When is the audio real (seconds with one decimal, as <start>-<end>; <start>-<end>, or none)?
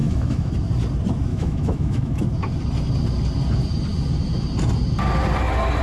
0.5-1.3; 2.2-5.8